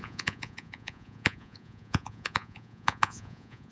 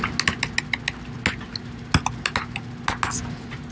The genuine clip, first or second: second